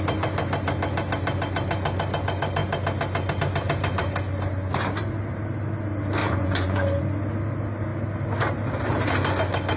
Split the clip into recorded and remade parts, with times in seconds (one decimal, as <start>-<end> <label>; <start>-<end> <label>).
0.0-6.2 recorded; 6.2-7.0 remade; 7.0-9.8 recorded